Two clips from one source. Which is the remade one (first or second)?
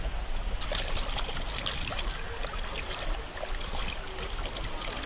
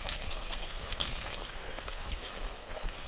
second